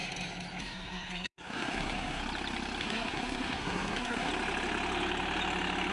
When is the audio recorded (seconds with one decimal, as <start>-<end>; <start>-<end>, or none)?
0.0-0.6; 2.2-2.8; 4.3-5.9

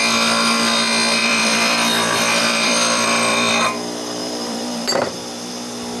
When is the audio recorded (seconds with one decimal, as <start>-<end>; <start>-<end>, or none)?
0.0-1.2; 3.5-4.2; 5.5-6.0

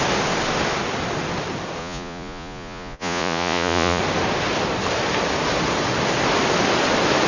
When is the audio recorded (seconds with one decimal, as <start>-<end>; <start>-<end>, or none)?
0.0-1.8; 4.0-7.3

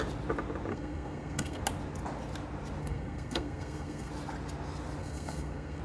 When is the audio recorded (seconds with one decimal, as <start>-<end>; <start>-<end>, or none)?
0.0-0.7; 1.6-2.8; 4.1-5.0

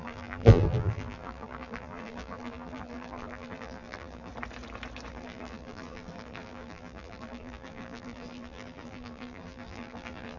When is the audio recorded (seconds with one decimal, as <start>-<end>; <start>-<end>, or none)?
4.3-5.1

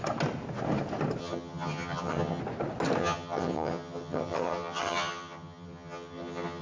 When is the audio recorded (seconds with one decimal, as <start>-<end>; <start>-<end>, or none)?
0.0-1.2; 2.4-3.0